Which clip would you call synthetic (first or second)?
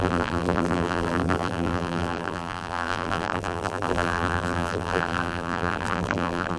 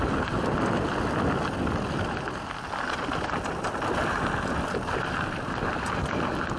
first